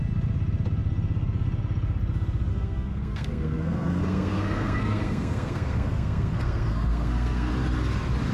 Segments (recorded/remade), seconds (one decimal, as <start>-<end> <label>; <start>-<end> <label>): 0.0-2.5 recorded; 2.5-7.5 remade; 7.5-8.3 recorded